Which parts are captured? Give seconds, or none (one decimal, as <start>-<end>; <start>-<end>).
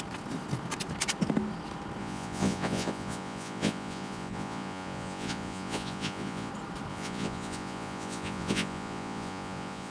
0.0-2.0; 6.5-6.9